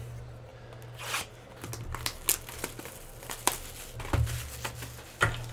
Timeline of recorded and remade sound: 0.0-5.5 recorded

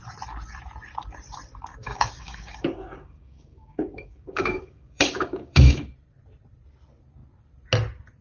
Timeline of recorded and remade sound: 0.0-1.7 recorded; 1.7-5.9 remade; 5.9-8.2 recorded